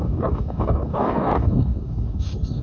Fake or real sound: fake